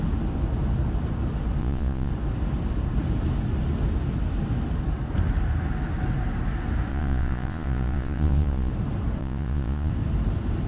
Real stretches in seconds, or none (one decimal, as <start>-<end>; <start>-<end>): 0.0-1.6; 2.1-6.9; 8.7-9.2; 9.9-10.7